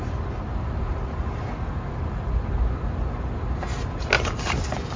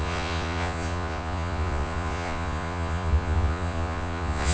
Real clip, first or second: first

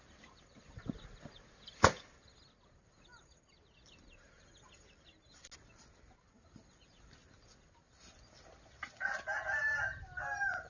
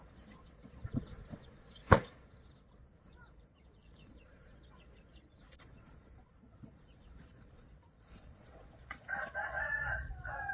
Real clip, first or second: first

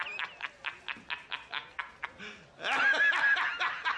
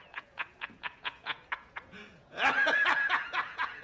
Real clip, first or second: first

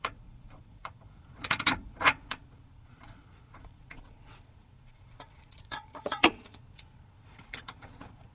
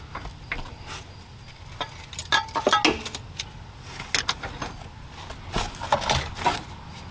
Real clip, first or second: second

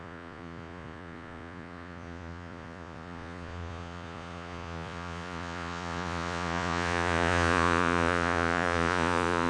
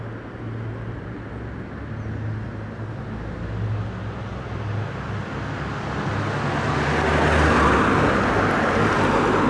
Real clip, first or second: second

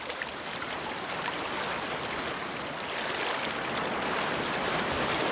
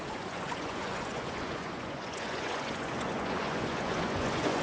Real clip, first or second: first